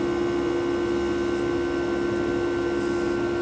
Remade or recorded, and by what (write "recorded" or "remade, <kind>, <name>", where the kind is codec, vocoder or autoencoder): recorded